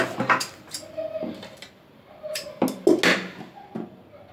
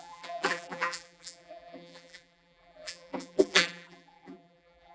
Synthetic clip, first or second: second